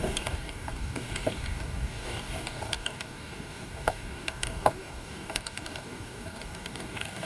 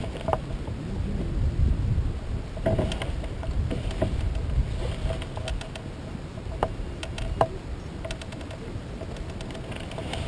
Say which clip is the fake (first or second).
first